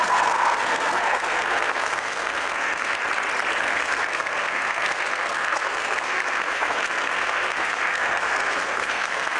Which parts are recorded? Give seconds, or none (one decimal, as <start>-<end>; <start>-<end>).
3.0-3.6